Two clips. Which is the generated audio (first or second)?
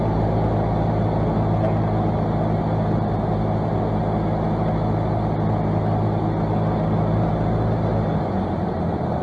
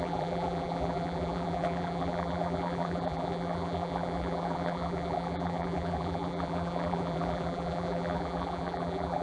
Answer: second